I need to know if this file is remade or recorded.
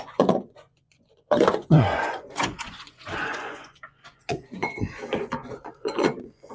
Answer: remade